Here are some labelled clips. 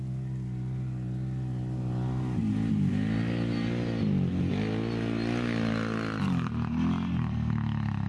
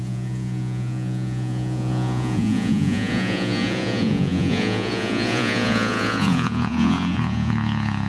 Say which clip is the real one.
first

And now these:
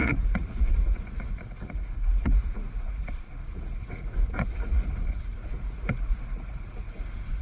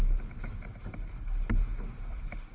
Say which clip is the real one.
second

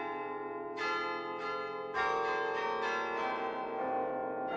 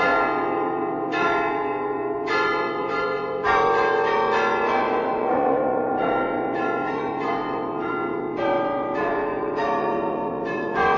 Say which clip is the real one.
first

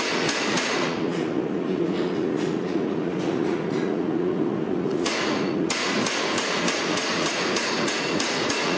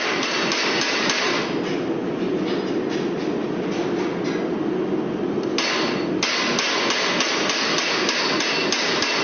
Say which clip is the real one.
second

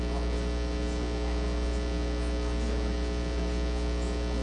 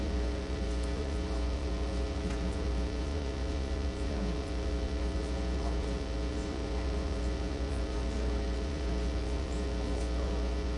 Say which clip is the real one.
first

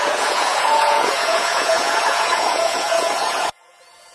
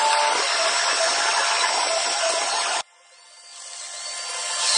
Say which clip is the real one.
second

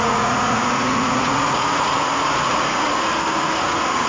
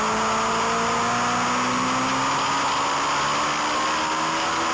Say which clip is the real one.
second